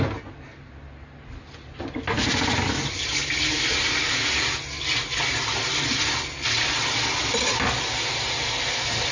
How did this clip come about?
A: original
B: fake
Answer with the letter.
A